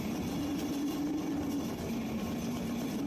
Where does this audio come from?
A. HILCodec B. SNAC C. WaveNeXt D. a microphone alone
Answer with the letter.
D